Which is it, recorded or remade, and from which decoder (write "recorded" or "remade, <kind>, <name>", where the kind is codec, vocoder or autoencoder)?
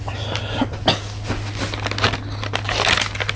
recorded